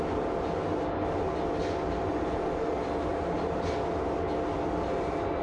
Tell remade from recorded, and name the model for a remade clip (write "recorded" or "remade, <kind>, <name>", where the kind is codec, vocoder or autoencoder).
recorded